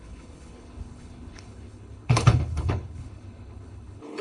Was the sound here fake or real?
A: fake